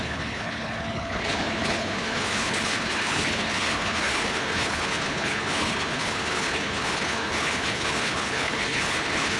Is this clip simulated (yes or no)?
yes